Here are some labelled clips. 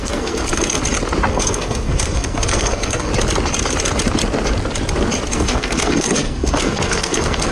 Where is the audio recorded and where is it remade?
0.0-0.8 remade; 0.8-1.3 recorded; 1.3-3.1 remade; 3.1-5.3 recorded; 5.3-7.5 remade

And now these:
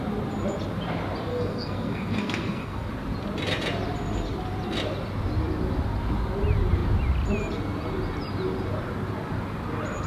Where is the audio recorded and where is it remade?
0.0-1.3 recorded; 1.3-2.9 remade; 2.9-10.1 recorded

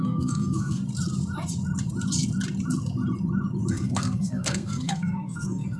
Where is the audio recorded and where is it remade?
0.0-0.8 remade; 0.8-3.7 recorded; 3.7-5.8 remade

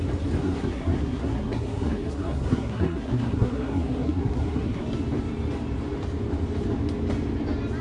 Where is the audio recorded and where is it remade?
0.0-0.4 recorded; 0.4-4.8 remade; 4.8-7.8 recorded

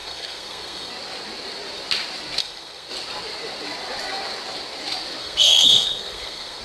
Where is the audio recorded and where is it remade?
0.0-0.9 remade; 0.9-2.4 recorded; 2.4-2.9 remade; 2.9-5.2 recorded; 5.2-6.6 remade